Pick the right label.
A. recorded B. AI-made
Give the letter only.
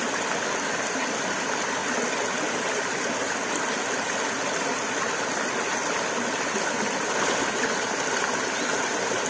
A